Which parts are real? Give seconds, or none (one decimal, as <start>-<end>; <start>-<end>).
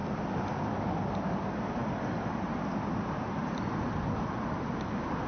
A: 0.0-5.3